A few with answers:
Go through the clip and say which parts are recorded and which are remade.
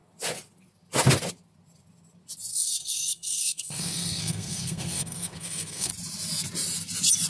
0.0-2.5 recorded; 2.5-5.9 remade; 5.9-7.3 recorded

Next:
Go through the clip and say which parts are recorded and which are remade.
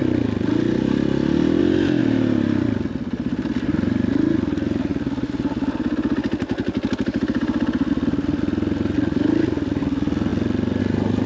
0.0-11.3 recorded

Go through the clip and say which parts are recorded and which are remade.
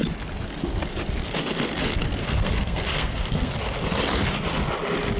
0.0-2.2 recorded; 2.2-3.5 remade; 3.5-5.2 recorded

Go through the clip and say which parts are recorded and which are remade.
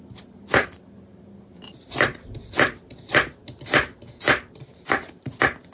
0.0-5.7 recorded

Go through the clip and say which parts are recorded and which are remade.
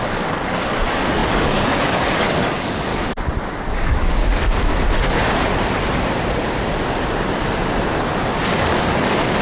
0.0-2.9 remade; 2.9-3.7 recorded; 3.7-4.7 remade; 4.7-8.2 recorded; 8.2-9.4 remade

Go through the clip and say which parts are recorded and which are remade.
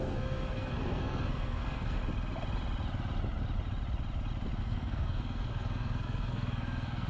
0.0-2.0 remade; 2.0-4.6 recorded; 4.6-7.1 remade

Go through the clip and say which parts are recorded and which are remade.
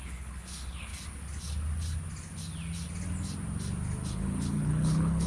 0.0-0.9 remade; 0.9-4.1 recorded; 4.1-5.3 remade